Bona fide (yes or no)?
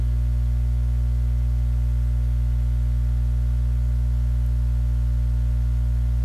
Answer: yes